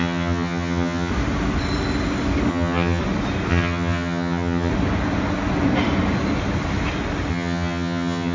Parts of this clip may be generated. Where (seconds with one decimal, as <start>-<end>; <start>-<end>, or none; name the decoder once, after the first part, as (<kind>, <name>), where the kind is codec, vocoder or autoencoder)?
0.0-1.1 (vocoder, HiFi-GAN); 2.5-3.0; 3.5-4.7; 7.3-8.3